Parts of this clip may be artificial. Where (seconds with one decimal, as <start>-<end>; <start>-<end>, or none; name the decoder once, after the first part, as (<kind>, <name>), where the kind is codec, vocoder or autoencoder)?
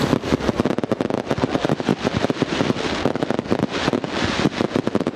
1.9-3.0 (vocoder, BigVGAN v2)